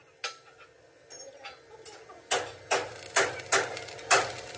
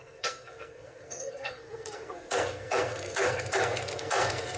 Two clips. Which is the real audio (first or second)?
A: first